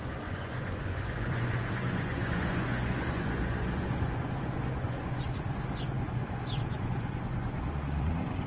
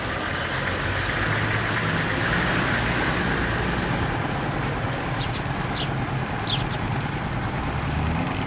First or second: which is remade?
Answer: first